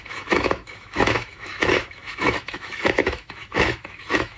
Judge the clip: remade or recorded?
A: remade